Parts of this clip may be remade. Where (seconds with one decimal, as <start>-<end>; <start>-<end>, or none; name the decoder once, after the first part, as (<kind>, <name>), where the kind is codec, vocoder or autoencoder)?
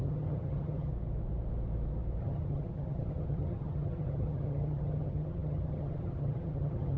0.0-0.9 (vocoder, HiFi-GAN); 2.2-7.0